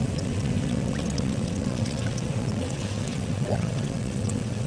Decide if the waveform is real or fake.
fake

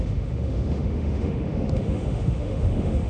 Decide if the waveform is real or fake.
fake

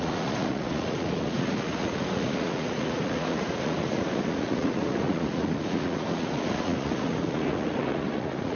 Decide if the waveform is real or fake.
fake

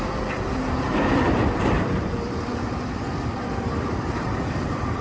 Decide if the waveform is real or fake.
fake